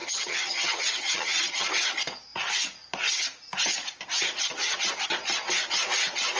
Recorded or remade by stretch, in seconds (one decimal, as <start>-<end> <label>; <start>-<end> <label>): 0.0-1.7 remade; 1.7-6.4 recorded